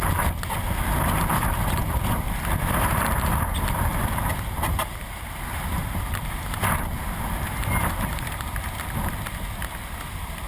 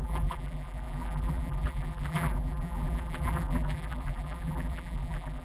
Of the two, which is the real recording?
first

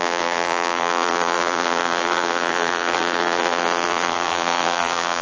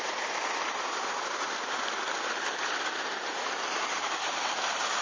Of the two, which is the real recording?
second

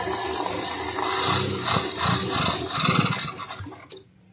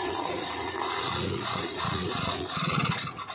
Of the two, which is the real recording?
first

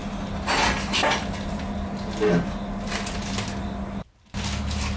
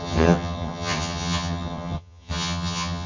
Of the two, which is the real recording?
first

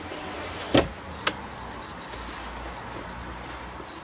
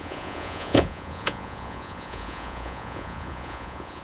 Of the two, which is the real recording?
first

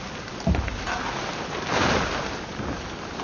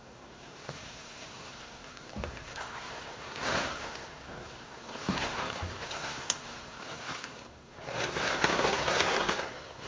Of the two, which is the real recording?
first